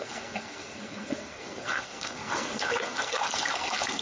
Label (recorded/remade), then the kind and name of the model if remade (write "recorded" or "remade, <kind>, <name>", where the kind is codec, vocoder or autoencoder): remade, codec, SNAC